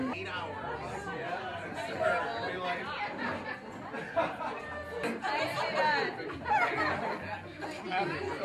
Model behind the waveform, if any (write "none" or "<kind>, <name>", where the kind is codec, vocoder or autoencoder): none